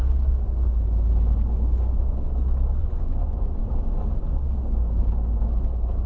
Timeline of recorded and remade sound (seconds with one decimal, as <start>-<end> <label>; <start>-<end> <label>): 0.0-2.8 recorded; 2.8-3.6 remade; 3.6-6.1 recorded